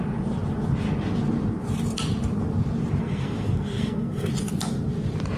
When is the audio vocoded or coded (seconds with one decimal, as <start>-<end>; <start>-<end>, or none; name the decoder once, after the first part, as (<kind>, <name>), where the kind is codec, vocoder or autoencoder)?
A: 3.0-4.3 (codec, SNAC)